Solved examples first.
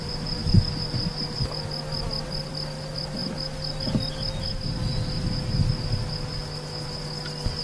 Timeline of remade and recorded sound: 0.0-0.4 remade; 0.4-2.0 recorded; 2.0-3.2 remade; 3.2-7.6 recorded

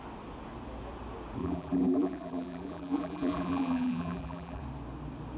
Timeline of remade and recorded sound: 0.0-1.4 recorded; 1.4-4.6 remade; 4.6-5.4 recorded

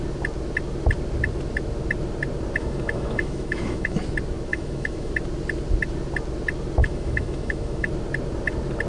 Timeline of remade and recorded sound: 0.0-2.6 recorded; 2.6-4.0 remade; 4.0-4.5 recorded; 4.5-5.1 remade; 5.1-6.8 recorded; 6.8-7.9 remade; 7.9-8.9 recorded

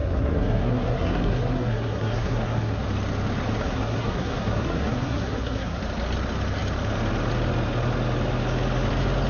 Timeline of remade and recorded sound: 0.0-2.8 remade; 2.8-3.6 recorded; 3.6-5.8 remade; 5.8-9.3 recorded

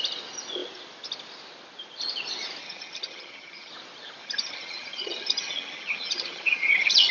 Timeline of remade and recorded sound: 0.0-2.6 recorded; 2.6-3.7 remade; 3.7-4.2 recorded; 4.2-7.1 remade

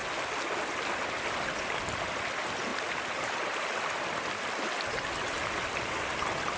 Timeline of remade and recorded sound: 0.0-2.7 recorded; 2.7-4.5 remade; 4.5-6.6 recorded

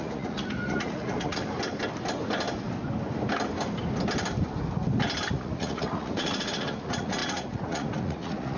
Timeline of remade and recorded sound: 0.0-1.4 remade; 1.4-5.3 recorded; 5.3-8.6 remade

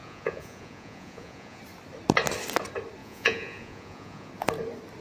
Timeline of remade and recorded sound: 0.0-1.6 remade; 1.6-3.0 recorded; 3.0-4.3 remade; 4.3-5.0 recorded